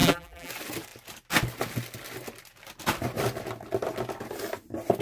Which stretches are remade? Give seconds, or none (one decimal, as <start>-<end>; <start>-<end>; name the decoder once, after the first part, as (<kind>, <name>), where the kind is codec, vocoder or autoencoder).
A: 0.0-0.5 (vocoder, BigVGAN v2)